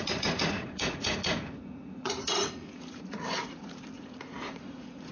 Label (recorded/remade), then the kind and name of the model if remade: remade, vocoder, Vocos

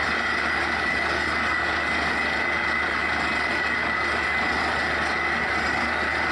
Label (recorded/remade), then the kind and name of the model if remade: recorded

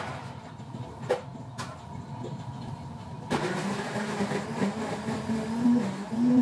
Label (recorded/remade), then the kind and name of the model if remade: recorded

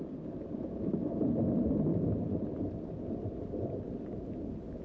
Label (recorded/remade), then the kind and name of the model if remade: recorded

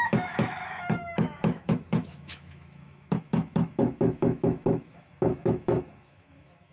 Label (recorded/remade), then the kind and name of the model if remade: remade, autoencoder, DAC-VAE